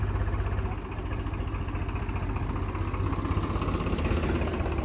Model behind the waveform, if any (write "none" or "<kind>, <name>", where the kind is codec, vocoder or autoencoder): none